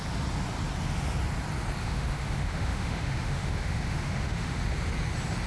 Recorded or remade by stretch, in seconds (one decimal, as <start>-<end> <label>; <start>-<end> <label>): 0.0-1.8 recorded; 1.8-4.6 remade; 4.6-5.5 recorded